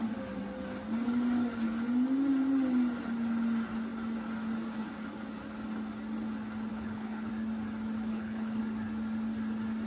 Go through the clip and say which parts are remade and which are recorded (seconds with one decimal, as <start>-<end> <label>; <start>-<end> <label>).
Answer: 0.0-6.7 recorded; 6.7-7.3 remade; 7.3-8.1 recorded; 8.1-8.6 remade; 8.6-9.9 recorded

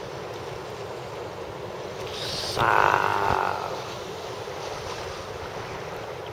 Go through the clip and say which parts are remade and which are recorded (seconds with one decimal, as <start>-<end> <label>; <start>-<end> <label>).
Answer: 0.0-6.3 recorded

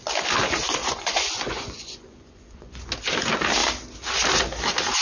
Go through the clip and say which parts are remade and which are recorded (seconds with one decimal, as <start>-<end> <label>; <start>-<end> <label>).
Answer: 0.0-0.8 recorded; 0.8-2.9 remade; 2.9-5.0 recorded

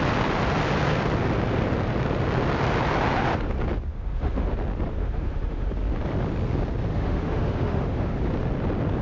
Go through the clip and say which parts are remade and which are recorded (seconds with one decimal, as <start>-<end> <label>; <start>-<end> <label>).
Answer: 0.0-3.9 recorded; 3.9-4.5 remade; 4.5-5.0 recorded; 5.0-5.7 remade; 5.7-6.9 recorded; 6.9-8.2 remade; 8.2-9.0 recorded